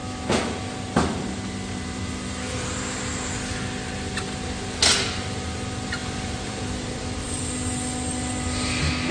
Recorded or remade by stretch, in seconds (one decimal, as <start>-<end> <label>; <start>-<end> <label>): 0.0-6.0 recorded; 6.0-7.4 remade; 7.4-9.1 recorded